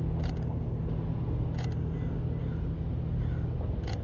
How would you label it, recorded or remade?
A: recorded